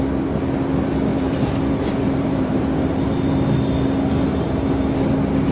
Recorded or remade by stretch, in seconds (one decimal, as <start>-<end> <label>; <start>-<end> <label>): 0.0-1.1 recorded; 1.1-3.0 remade; 3.0-4.3 recorded; 4.3-4.8 remade; 4.8-5.5 recorded